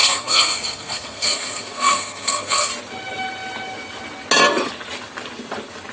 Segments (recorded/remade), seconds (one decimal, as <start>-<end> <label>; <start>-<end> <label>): 0.0-2.7 remade; 2.7-5.9 recorded